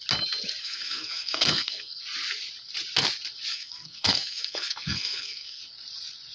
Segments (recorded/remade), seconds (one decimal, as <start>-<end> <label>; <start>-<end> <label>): 0.0-0.6 recorded; 0.6-2.0 remade; 2.0-3.5 recorded; 3.5-5.6 remade; 5.6-6.3 recorded